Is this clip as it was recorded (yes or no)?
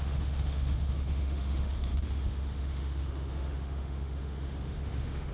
no